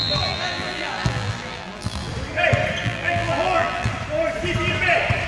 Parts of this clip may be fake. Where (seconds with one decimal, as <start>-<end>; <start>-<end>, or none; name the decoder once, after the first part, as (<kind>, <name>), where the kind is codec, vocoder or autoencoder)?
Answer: 0.0-2.1 (vocoder, BigVGAN v2); 2.8-3.9